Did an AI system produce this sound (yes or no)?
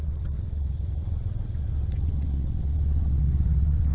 yes